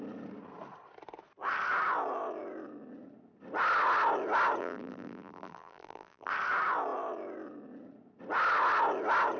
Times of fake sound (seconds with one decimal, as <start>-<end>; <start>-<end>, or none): 4.6-6.3